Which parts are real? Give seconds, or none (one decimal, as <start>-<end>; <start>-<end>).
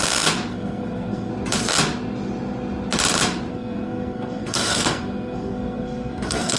0.0-0.5; 1.3-3.5